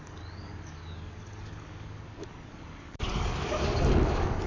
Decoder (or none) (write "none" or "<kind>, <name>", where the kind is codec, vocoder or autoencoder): codec, DAC